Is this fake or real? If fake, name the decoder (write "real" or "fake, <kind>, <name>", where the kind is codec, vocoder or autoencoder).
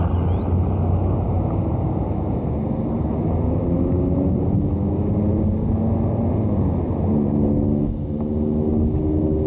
real